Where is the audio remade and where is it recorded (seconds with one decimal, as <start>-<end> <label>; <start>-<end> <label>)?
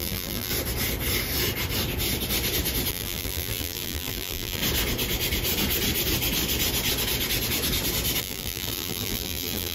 0.0-0.5 remade; 0.5-2.9 recorded; 2.9-4.6 remade; 4.6-8.2 recorded; 8.2-9.7 remade